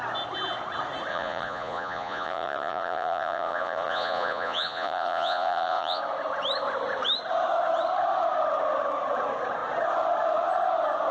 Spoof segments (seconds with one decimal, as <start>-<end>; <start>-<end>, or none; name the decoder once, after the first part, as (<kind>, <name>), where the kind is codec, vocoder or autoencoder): 1.1-6.0 (vocoder, Vocos)